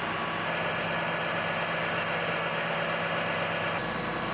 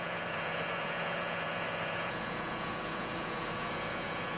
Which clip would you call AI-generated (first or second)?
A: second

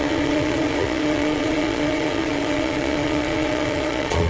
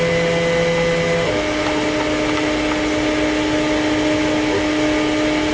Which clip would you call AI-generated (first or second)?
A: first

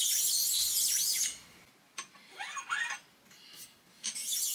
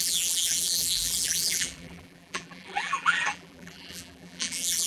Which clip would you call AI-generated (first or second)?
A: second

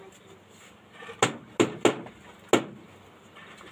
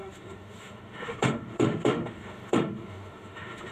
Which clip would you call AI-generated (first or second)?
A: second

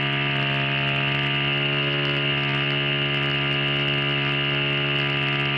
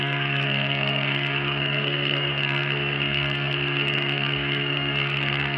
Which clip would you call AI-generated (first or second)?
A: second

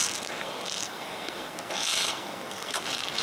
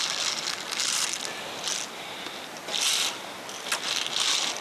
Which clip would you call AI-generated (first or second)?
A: first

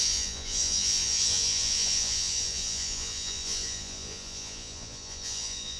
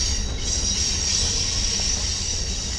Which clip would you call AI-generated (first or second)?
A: first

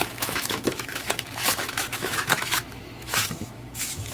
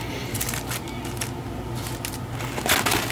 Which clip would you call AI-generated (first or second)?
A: first